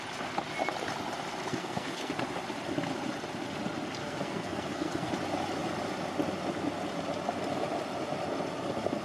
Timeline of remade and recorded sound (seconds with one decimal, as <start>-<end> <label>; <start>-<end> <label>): 0.0-1.5 recorded; 1.5-2.1 remade; 2.1-4.0 recorded; 4.0-5.1 remade; 5.1-9.0 recorded